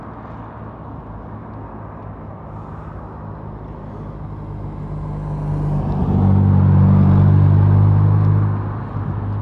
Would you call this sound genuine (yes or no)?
yes